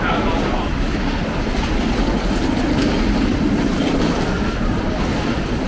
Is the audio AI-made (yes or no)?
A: no